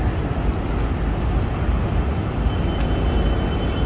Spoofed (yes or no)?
no